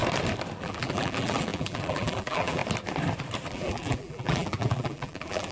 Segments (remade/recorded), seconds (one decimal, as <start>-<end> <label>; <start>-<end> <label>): 0.0-0.6 recorded; 0.6-2.6 remade; 2.6-3.5 recorded; 3.5-5.5 remade